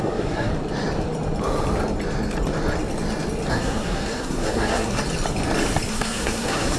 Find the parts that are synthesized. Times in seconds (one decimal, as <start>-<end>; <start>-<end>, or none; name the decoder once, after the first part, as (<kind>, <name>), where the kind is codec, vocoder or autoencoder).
0.0-0.5 (codec, SNAC); 3.5-5.0; 5.9-6.8